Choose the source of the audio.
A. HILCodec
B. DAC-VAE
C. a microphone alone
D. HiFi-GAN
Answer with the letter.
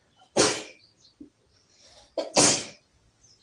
C